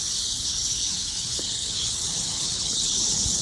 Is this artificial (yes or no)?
yes